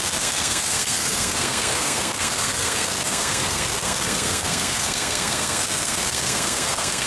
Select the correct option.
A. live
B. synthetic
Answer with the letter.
B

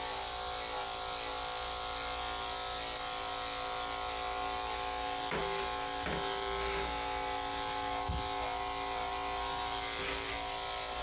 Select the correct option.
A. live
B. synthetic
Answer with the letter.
A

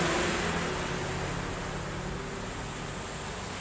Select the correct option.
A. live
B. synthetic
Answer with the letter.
A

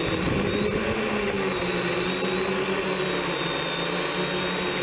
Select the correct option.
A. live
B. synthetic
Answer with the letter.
A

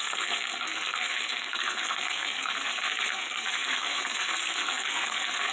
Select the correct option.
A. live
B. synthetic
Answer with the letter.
B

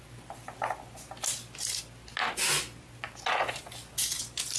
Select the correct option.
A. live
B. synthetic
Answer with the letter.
A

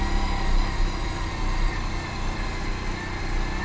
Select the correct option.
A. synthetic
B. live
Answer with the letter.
B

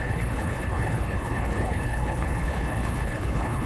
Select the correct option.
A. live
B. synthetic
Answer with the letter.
B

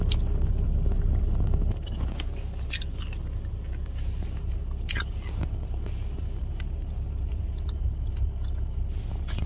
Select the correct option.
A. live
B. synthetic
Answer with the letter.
A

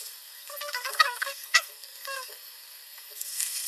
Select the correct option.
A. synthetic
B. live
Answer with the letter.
A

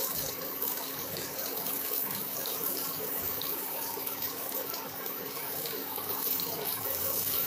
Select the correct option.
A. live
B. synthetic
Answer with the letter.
B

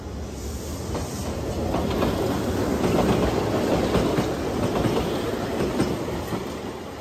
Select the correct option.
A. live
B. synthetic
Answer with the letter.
A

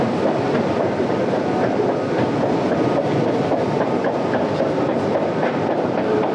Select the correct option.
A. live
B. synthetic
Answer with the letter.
B